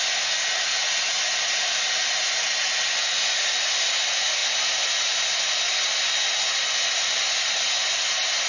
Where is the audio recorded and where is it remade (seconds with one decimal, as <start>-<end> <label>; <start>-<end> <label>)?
0.0-8.5 recorded